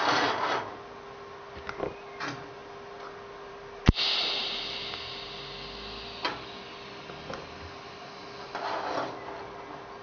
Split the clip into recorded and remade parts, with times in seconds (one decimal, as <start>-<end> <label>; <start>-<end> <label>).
0.0-10.0 recorded